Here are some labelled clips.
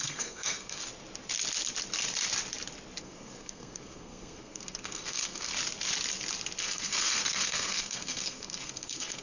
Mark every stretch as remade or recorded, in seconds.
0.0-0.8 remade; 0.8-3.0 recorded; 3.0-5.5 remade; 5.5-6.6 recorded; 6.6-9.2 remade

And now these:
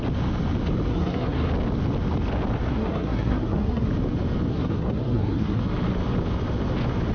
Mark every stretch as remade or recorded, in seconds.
0.0-0.9 recorded; 0.9-1.5 remade; 1.5-2.7 recorded; 2.7-3.9 remade; 3.9-4.5 recorded; 4.5-5.6 remade; 5.6-7.1 recorded

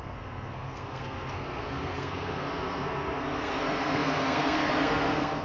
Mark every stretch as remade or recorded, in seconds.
0.0-5.4 remade

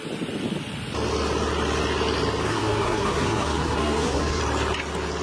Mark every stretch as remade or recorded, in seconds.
0.0-2.5 recorded; 2.5-4.4 remade; 4.4-5.2 recorded

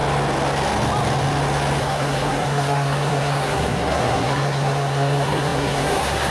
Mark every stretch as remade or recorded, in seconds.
0.0-1.8 recorded; 1.8-6.3 remade

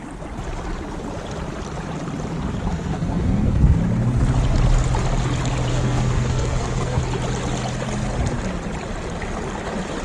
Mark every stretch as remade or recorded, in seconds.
0.0-2.7 recorded; 2.7-3.8 remade; 3.8-5.7 recorded; 5.7-7.0 remade; 7.0-10.0 recorded

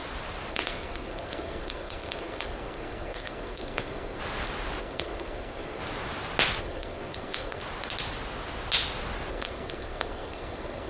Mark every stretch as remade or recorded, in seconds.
0.0-0.5 recorded; 0.5-4.2 remade; 4.2-4.8 recorded; 4.8-5.8 remade; 5.8-6.6 recorded; 6.6-7.6 remade; 7.6-9.3 recorded; 9.3-10.9 remade